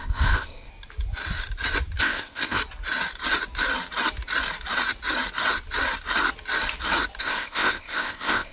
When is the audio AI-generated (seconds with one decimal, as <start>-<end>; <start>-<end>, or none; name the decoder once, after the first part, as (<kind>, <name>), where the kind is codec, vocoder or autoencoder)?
0.0-0.7 (codec, ZipCodec); 2.0-2.6; 7.2-8.5